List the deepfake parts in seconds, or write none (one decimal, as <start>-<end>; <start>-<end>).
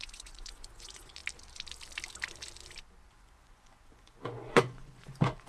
0.0-1.2; 3.1-5.5